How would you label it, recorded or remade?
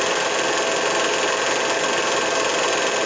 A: recorded